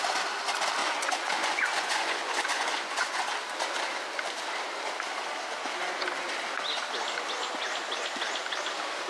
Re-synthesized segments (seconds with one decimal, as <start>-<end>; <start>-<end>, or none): 0.8-3.2